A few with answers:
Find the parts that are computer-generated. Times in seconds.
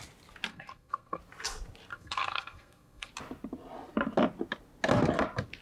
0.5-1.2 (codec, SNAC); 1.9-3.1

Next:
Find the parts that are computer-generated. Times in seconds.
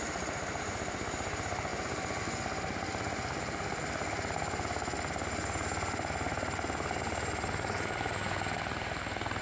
1.7-2.2 (vocoder, BigVGAN v2)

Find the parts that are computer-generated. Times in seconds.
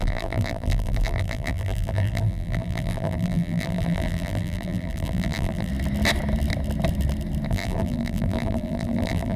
0.0-5.7 (vocoder, BigVGAN v2); 7.5-9.4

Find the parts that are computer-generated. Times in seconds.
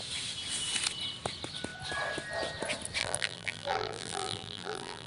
3.0-5.1 (vocoder, BigVGAN v2)